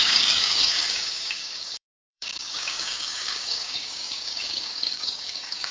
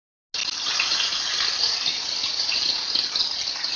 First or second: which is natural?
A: second